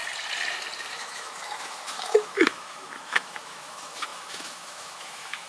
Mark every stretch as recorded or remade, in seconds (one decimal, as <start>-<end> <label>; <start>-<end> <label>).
0.0-0.9 recorded; 0.9-5.5 remade